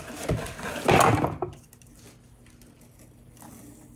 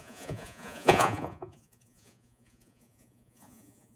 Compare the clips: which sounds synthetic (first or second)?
second